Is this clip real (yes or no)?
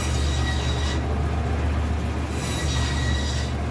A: yes